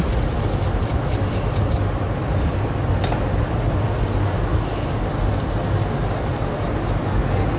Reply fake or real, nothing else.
real